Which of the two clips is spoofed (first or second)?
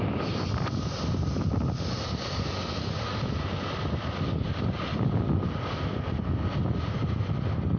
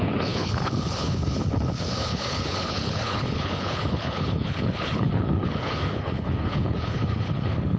second